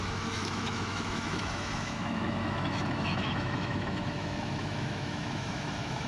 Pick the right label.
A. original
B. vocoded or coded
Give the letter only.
B